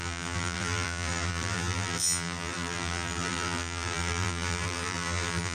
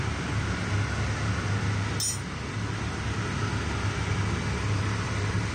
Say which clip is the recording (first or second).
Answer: second